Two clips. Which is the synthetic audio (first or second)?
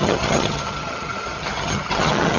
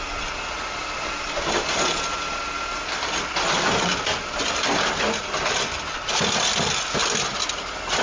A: first